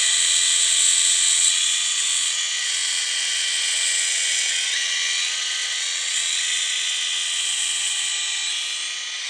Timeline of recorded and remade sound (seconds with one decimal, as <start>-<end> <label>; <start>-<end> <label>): 0.0-8.1 remade; 8.1-9.3 recorded